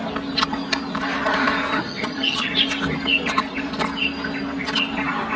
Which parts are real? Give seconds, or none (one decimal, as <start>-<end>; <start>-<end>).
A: 0.0-1.9; 2.5-5.4